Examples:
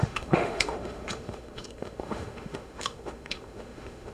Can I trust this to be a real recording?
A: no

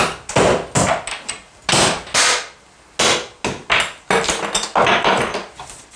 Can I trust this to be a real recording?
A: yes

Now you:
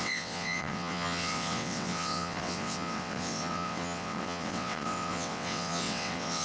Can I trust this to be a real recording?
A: no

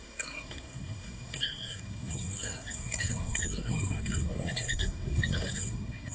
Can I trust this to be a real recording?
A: no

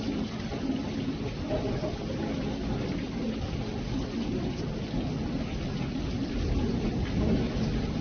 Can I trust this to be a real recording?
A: yes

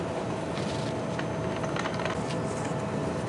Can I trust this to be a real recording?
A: yes